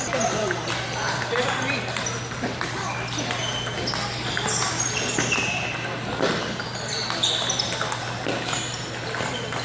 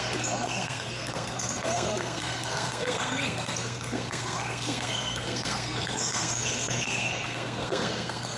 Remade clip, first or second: second